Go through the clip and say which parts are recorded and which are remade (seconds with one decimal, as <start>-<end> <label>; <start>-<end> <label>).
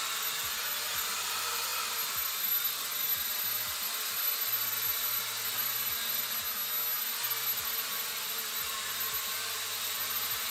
0.0-6.4 remade; 6.4-7.2 recorded; 7.2-10.5 remade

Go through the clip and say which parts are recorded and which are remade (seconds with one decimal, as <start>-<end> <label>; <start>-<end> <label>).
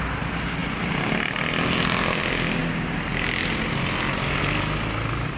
0.0-5.4 recorded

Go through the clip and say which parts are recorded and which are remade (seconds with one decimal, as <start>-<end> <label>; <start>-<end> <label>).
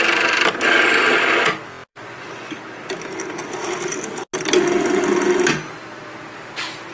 0.0-1.9 recorded; 1.9-2.5 remade; 2.5-6.9 recorded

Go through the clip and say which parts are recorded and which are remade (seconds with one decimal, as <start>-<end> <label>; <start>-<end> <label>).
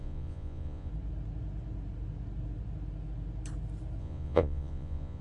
0.0-0.9 remade; 0.9-4.0 recorded; 4.0-5.2 remade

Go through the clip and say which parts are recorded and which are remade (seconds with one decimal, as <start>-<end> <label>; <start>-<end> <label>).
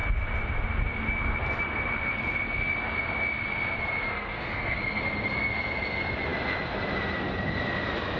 0.0-4.1 recorded; 4.1-5.0 remade; 5.0-8.2 recorded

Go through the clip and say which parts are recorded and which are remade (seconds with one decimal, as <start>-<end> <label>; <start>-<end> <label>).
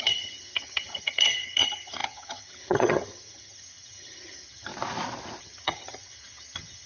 0.0-4.7 remade; 4.7-5.4 recorded; 5.4-6.9 remade